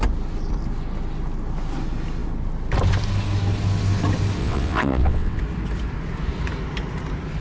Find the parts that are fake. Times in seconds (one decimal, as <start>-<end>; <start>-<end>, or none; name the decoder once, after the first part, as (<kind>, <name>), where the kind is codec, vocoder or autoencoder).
4.4-5.4 (vocoder, WaveNeXt)